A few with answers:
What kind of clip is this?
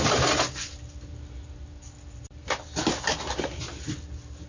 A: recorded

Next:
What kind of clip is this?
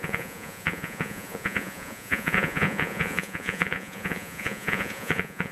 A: remade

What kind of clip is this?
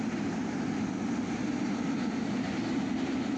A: recorded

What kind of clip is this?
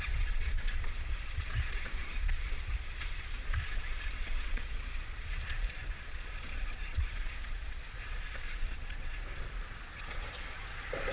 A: remade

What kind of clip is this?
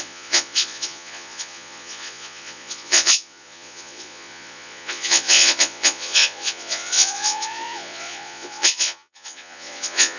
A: remade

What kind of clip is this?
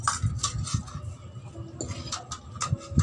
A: recorded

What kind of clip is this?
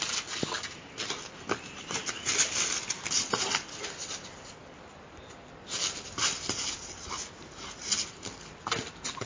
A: recorded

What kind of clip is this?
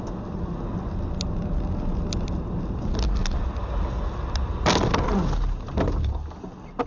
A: recorded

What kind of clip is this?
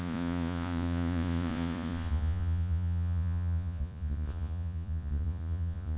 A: remade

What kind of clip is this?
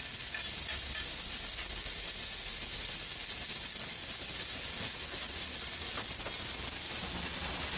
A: recorded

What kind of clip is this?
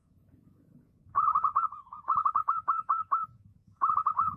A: remade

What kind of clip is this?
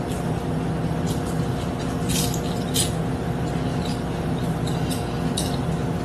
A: recorded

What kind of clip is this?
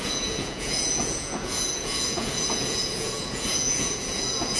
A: remade